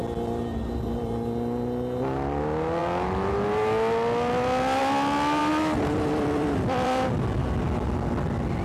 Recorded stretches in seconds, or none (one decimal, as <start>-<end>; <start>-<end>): 0.0-5.4; 7.4-8.6

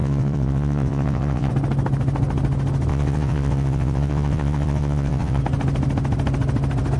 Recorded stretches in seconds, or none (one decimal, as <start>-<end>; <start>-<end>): 1.5-2.9; 5.4-7.0

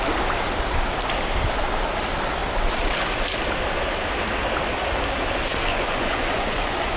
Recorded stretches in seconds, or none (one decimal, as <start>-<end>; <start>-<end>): 0.0-5.7

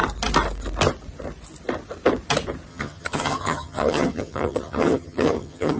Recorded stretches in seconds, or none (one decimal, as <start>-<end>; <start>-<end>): 0.0-2.7